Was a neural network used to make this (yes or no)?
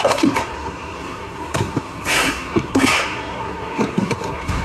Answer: yes